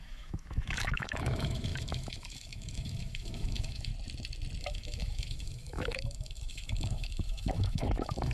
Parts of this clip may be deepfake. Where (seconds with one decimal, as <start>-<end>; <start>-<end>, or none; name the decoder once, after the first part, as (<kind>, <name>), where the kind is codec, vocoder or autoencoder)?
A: 0.0-3.9 (autoencoder, DAC-VAE); 4.6-8.3